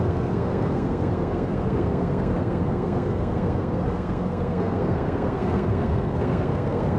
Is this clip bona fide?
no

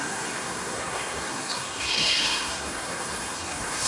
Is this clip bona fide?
no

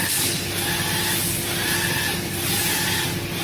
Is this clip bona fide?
yes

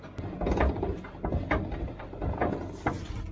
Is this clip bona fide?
yes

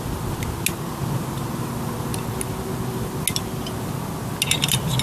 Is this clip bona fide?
yes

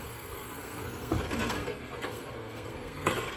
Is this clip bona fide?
no